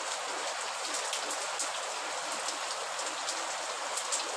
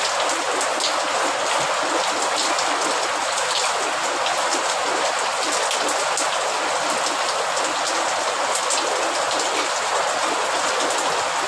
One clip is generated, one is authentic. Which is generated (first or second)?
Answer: first